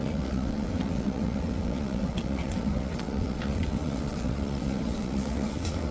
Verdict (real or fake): fake